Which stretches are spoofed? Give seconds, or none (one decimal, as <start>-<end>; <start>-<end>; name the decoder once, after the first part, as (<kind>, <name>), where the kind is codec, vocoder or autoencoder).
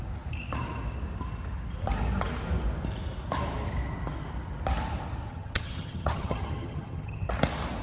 5.3-7.3 (vocoder, HiFi-GAN)